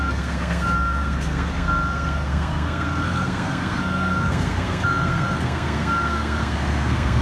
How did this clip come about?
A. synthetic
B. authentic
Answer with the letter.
A